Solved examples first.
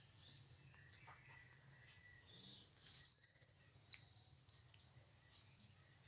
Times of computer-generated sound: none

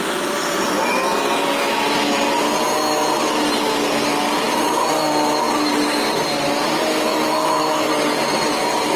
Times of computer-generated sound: 7.1-7.9

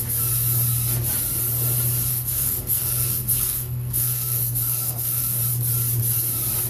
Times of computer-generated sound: 2.1-5.4